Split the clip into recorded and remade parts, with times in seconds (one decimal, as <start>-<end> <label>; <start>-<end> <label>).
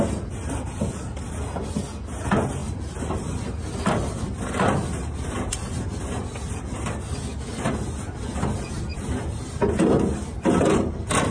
0.0-11.3 recorded